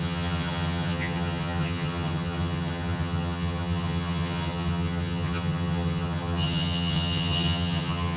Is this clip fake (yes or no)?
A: yes